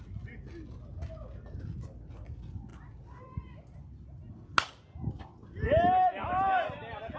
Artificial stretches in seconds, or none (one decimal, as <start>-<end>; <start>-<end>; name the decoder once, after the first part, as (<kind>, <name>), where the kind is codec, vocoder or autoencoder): none